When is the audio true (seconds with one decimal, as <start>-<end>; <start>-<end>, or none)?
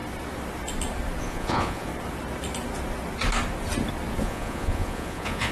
0.0-1.2; 1.9-4.2